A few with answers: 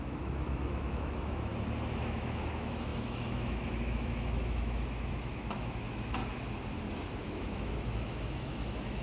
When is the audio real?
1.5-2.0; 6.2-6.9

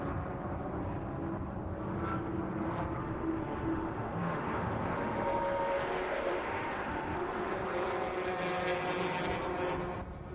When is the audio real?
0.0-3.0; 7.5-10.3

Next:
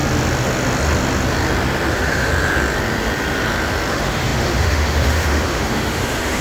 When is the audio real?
0.0-1.9; 2.3-3.9